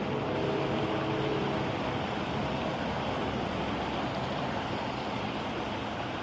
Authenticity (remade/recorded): recorded